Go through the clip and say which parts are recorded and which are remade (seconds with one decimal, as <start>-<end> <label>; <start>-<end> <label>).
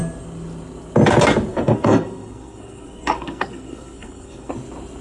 0.0-1.5 recorded; 1.5-4.5 remade; 4.5-5.0 recorded